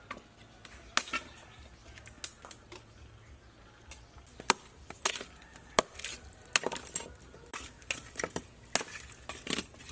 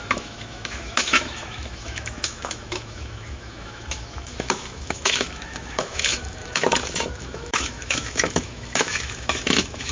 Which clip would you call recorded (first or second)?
first